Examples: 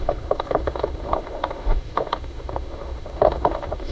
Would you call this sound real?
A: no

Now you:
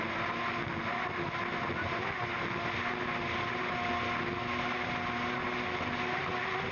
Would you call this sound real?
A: yes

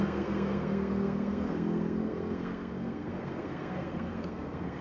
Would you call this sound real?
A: no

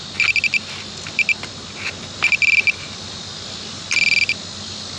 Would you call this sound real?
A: yes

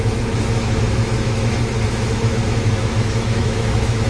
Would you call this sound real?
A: no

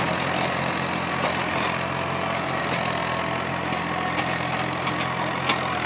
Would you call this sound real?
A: yes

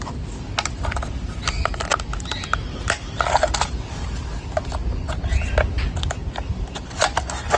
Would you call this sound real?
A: yes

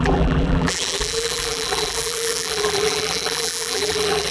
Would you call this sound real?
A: no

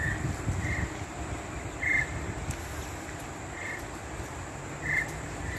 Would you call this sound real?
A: yes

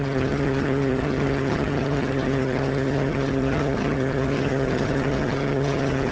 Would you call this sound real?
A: no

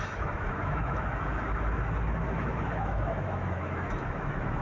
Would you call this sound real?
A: no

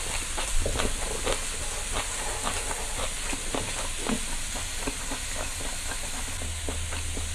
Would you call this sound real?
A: yes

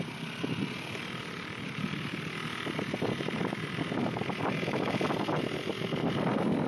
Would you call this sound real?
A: yes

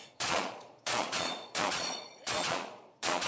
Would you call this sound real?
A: no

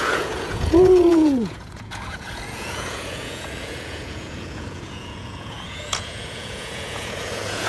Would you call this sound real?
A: no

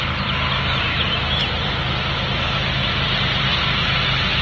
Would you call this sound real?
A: yes